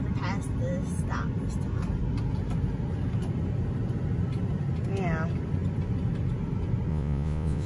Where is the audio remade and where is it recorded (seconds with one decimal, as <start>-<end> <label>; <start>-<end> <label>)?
0.0-6.9 recorded; 6.9-7.7 remade